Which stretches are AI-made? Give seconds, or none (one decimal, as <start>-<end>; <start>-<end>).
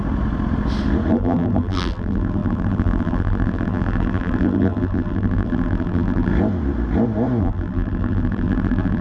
1.1-6.3; 7.4-9.0